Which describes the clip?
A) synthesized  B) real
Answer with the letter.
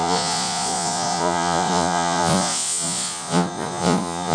A